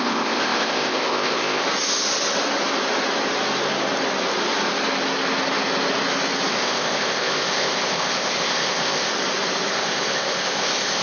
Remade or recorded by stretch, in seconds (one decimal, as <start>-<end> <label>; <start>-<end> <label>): 0.0-1.6 remade; 1.6-6.5 recorded; 6.5-9.1 remade; 9.1-9.7 recorded; 9.7-11.0 remade